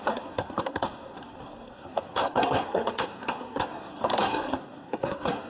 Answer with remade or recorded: remade